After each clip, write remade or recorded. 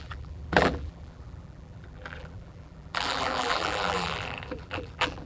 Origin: remade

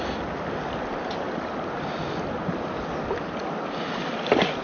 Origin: recorded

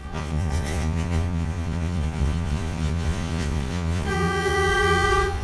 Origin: remade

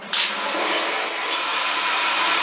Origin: recorded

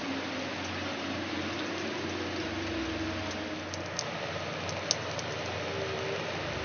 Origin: recorded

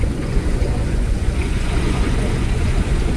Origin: remade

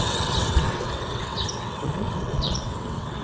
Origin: remade